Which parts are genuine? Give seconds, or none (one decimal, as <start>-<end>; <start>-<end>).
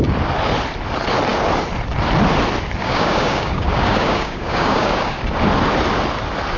0.0-2.8; 5.2-6.6